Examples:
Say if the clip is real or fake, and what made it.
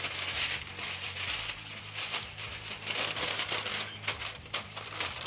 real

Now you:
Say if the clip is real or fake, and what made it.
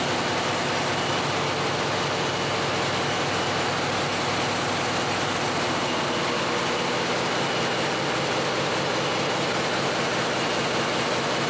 real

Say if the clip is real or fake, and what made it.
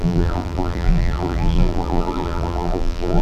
fake, vocoder, BigVGAN v2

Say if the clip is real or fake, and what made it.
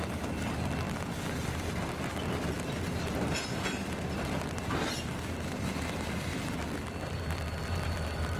real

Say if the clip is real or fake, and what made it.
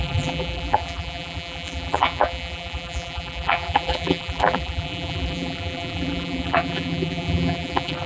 fake, vocoder, BigVGAN v2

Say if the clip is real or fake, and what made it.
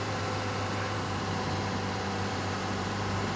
fake, vocoder, BigVGAN v2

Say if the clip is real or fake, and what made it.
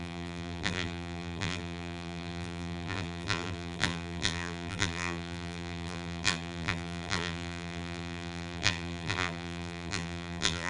fake, vocoder, BigVGAN v2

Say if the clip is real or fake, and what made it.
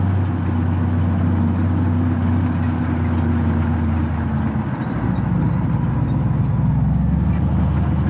real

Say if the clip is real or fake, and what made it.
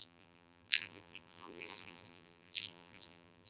fake, vocoder, BigVGAN v2